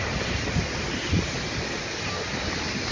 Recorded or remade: recorded